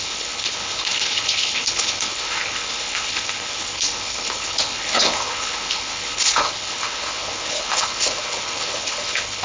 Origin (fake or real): fake